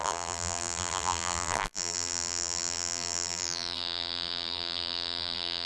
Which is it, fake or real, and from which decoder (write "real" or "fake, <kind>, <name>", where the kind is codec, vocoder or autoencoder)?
fake, vocoder, BigVGAN v2